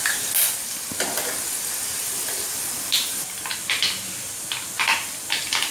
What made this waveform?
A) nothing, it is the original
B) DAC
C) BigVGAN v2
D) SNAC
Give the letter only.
A